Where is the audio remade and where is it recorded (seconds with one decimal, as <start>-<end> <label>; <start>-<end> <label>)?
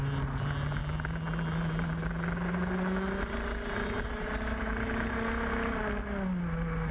0.0-6.9 recorded